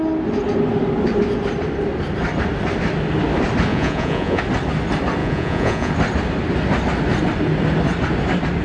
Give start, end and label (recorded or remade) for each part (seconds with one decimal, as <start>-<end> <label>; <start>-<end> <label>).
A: 0.0-3.7 recorded; 3.7-4.4 remade; 4.4-5.2 recorded; 5.2-5.9 remade; 5.9-8.6 recorded